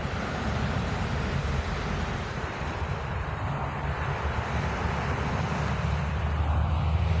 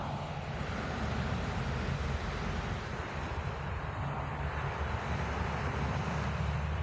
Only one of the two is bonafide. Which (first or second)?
second